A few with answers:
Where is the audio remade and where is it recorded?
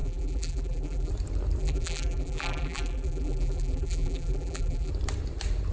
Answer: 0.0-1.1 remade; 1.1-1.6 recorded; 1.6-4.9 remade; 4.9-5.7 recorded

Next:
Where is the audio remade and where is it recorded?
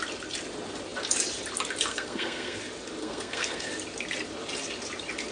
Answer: 0.0-1.9 recorded; 1.9-2.6 remade; 2.6-3.0 recorded; 3.0-3.7 remade; 3.7-5.3 recorded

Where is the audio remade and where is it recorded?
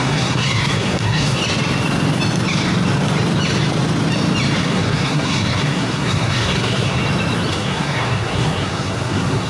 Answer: 0.0-1.4 remade; 1.4-4.6 recorded; 4.6-7.0 remade; 7.0-7.5 recorded; 7.5-9.5 remade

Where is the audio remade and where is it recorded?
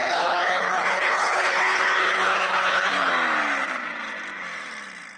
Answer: 0.0-3.1 remade; 3.1-5.2 recorded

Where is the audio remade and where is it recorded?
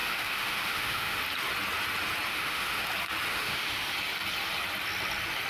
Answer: 0.0-1.2 remade; 1.2-2.3 recorded; 2.3-2.9 remade; 2.9-3.3 recorded; 3.3-3.9 remade; 3.9-5.5 recorded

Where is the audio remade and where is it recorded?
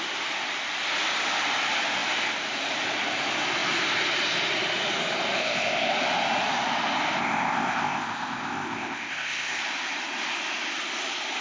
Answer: 0.0-5.4 recorded; 5.4-5.9 remade; 5.9-7.2 recorded; 7.2-9.6 remade; 9.6-11.4 recorded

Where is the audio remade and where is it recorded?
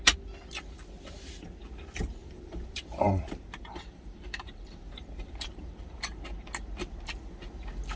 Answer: 0.0-2.2 recorded; 2.2-6.2 remade; 6.2-8.0 recorded